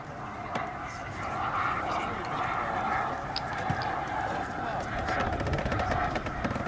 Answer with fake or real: real